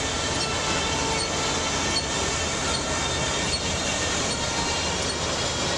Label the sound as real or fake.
real